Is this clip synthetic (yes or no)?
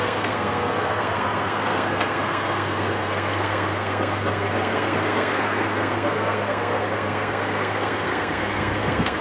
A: yes